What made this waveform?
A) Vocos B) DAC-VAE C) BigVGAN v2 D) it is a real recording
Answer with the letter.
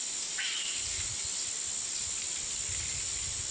D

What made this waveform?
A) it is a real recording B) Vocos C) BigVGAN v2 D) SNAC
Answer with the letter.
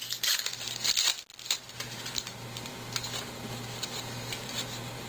A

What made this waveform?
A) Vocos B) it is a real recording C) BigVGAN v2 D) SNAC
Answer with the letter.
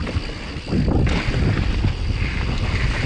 B